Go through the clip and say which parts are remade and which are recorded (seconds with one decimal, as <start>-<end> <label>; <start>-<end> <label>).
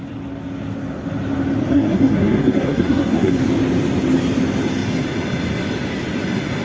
0.0-1.7 recorded; 1.7-3.4 remade; 3.4-6.6 recorded